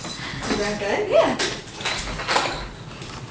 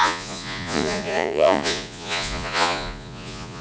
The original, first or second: first